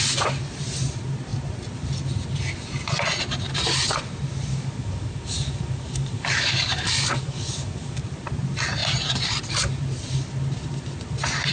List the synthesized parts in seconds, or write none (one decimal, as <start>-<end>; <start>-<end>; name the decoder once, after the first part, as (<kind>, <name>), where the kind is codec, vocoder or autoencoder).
4.5-8.0 (codec, DAC)

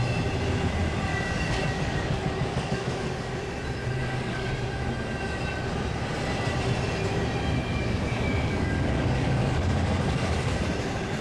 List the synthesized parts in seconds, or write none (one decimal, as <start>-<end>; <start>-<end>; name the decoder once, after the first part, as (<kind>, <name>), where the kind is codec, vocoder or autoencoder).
1.1-3.4 (codec, DAC); 4.0-4.5; 7.6-10.6

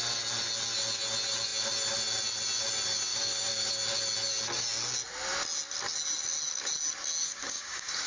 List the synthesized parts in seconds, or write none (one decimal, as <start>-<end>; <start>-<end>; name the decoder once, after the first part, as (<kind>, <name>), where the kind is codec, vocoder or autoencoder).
3.1-3.7 (codec, DAC); 7.2-8.1